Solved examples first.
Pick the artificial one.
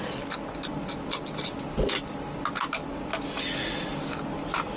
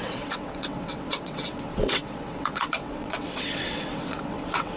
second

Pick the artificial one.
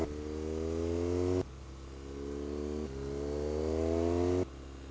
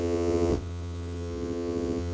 second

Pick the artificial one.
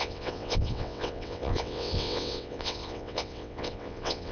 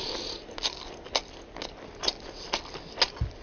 first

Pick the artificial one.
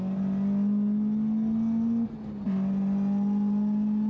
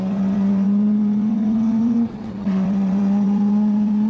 second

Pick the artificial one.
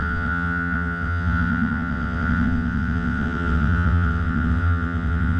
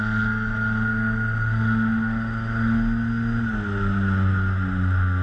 first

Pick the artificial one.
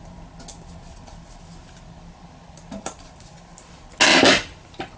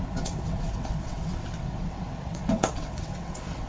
second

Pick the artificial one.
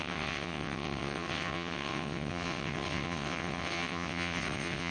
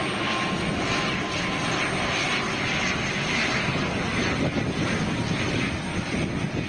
first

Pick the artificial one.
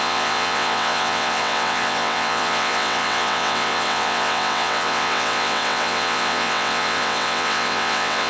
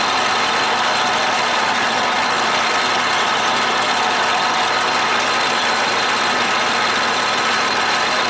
first